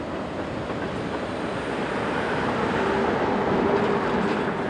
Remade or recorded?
recorded